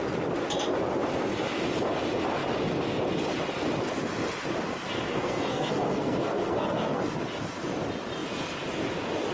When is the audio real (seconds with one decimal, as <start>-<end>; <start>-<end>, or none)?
0.0-5.1; 7.0-9.3